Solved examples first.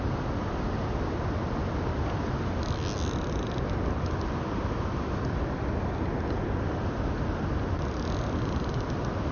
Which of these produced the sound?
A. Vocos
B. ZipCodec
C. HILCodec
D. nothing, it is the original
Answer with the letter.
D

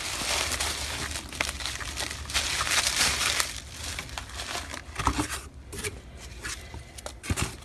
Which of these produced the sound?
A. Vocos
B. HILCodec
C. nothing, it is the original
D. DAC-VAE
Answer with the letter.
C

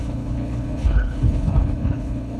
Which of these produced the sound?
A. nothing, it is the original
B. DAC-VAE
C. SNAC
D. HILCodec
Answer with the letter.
D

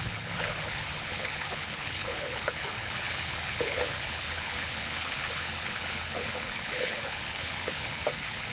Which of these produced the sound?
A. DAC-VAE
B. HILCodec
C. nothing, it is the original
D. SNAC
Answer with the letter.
B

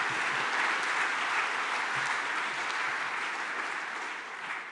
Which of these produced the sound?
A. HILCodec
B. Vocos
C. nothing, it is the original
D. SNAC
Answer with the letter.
C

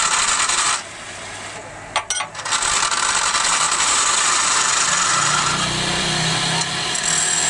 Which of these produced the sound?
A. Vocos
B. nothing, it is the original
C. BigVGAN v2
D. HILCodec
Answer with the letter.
B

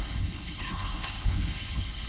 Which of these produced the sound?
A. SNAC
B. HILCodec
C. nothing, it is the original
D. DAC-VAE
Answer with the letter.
B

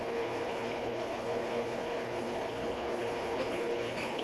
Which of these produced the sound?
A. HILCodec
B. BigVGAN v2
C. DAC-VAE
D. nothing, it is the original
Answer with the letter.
A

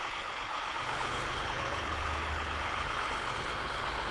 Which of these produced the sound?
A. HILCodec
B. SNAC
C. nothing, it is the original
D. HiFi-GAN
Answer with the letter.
A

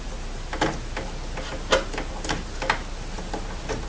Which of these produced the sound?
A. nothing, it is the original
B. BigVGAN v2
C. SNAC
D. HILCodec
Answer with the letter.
A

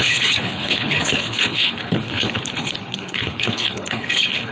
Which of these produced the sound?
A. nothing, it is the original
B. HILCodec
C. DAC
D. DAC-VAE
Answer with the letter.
B